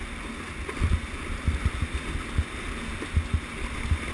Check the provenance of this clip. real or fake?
real